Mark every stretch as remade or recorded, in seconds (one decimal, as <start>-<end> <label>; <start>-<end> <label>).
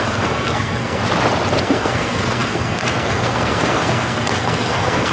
0.0-1.0 remade; 1.0-1.6 recorded; 1.6-5.1 remade